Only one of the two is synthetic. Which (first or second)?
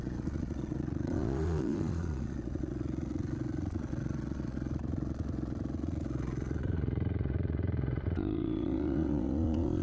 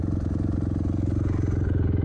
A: first